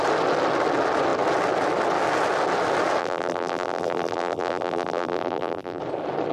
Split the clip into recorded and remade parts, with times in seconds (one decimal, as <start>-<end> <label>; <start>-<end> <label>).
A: 0.0-3.0 recorded; 3.0-5.8 remade; 5.8-6.3 recorded